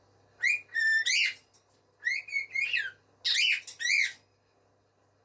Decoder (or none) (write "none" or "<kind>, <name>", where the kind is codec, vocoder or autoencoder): none